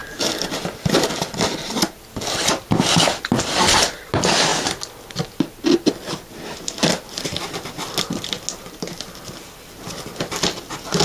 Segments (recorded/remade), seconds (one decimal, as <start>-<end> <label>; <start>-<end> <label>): 0.0-11.0 recorded